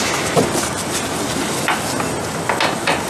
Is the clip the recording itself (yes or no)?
yes